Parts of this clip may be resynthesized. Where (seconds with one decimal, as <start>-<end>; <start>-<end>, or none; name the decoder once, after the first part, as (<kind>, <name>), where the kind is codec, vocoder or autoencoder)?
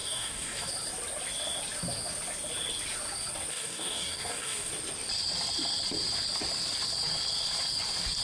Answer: 0.0-0.7 (codec, DAC); 3.5-4.7